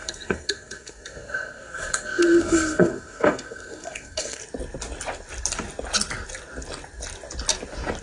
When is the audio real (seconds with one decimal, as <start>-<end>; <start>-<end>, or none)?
4.4-8.0